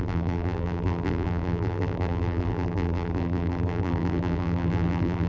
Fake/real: fake